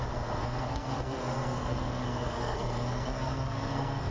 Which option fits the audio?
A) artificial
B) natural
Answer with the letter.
A